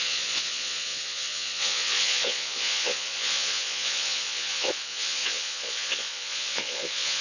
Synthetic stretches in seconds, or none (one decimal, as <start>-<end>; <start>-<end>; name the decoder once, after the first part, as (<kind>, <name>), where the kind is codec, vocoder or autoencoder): 0.0-7.2 (vocoder, Vocos)